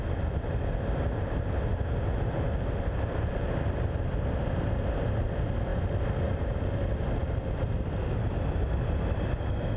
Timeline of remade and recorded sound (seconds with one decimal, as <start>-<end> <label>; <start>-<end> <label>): 0.0-9.8 recorded

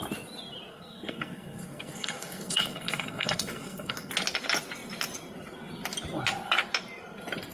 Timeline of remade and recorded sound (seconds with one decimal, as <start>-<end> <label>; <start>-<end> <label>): 0.0-0.7 recorded; 0.7-4.1 remade; 4.1-7.5 recorded